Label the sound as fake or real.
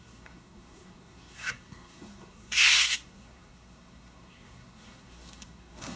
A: fake